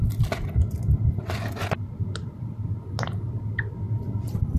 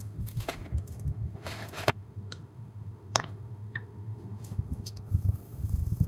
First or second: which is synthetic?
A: second